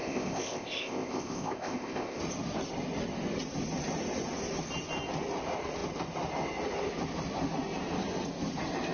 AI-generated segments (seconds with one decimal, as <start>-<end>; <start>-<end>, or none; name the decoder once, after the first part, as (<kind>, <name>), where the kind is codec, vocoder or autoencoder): 0.0-2.2 (codec, ZipCodec)